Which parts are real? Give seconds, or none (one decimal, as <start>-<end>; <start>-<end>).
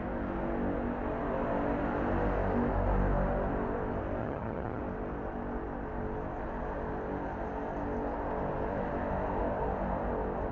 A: 0.0-4.2; 4.8-10.5